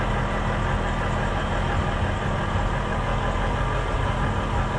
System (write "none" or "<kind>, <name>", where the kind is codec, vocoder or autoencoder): none